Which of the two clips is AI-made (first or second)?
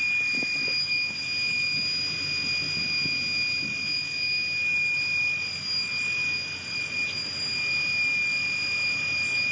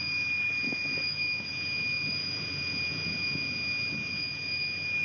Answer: second